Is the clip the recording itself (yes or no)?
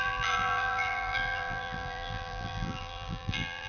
no